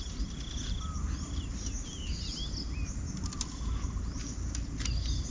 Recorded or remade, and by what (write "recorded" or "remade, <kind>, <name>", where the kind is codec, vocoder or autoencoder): recorded